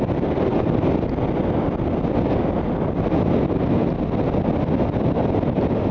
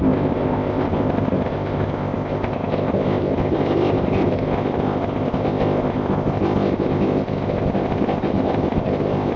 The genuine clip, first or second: first